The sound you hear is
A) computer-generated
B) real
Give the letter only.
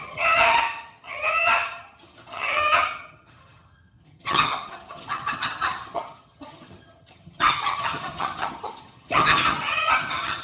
A